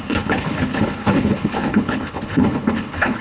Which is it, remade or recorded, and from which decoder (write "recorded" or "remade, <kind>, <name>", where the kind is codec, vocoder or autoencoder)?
remade, codec, HILCodec